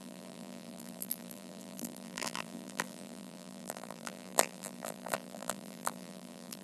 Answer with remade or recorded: remade